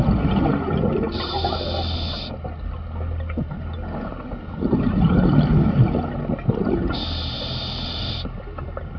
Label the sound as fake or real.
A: real